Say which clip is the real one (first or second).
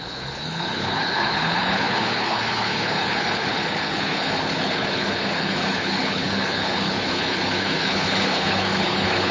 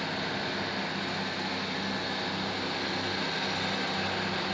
second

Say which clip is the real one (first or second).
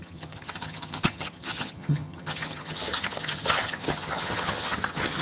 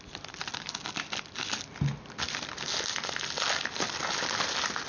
second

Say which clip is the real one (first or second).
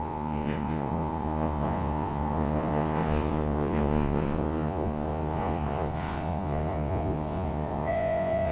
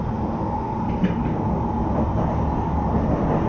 second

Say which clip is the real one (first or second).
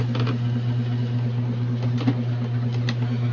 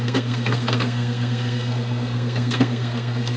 first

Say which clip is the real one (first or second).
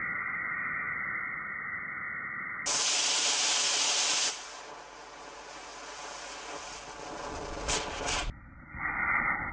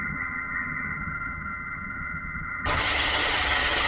first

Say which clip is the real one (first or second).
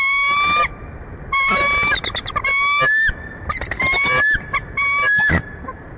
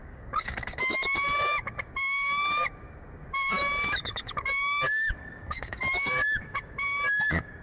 first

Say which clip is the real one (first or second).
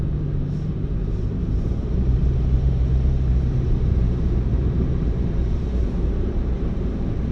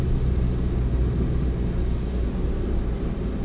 second